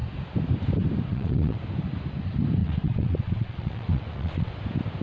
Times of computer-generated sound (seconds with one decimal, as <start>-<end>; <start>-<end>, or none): 1.1-1.6; 2.6-4.5